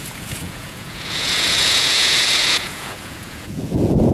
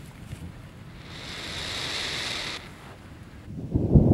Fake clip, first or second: first